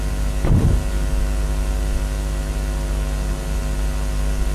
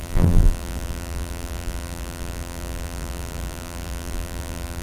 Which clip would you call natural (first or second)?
first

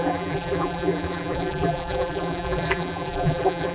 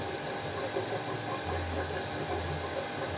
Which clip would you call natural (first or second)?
second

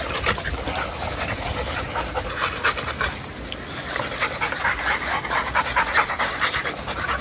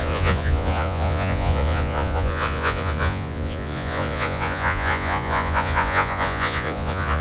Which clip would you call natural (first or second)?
first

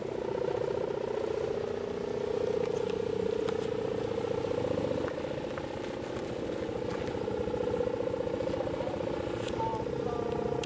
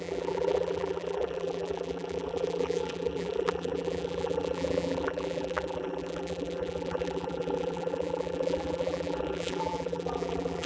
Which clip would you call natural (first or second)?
first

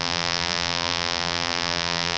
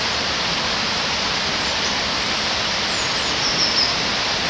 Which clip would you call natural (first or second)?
second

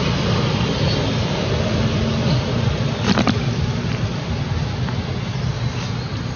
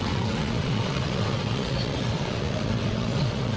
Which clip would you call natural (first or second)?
first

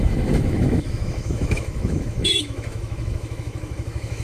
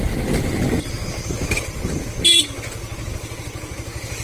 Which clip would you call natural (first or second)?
second